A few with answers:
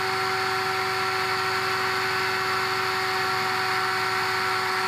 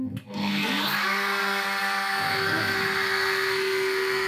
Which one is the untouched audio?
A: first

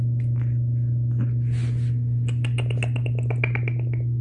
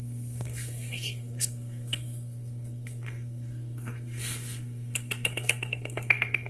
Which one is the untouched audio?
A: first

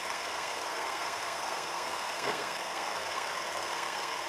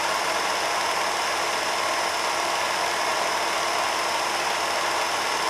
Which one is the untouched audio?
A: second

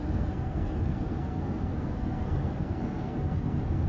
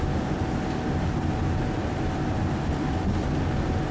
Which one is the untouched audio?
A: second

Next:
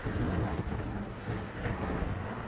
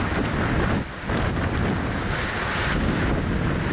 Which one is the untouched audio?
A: second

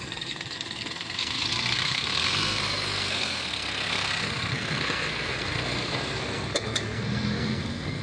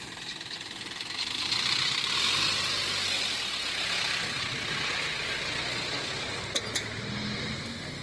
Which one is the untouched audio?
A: second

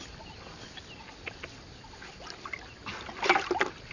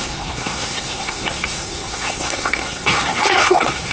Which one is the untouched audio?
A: first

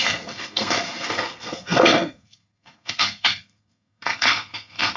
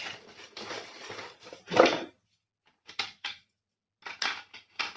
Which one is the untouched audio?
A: second